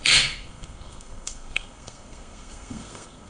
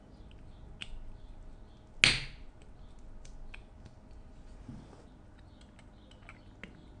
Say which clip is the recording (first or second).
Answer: second